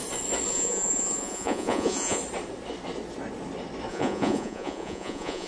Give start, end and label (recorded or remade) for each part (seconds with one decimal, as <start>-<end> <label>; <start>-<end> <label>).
0.0-0.5 recorded; 0.5-2.2 remade; 2.2-3.9 recorded; 3.9-5.5 remade